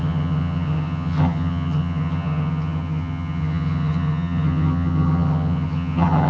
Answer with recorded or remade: remade